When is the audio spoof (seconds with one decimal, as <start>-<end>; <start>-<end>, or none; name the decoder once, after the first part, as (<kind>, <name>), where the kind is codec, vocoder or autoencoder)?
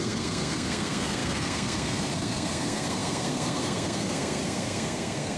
0.0-5.4 (codec, SNAC)